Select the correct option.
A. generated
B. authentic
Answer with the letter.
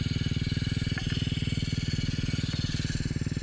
B